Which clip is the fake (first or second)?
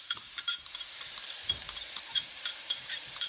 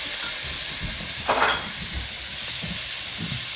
first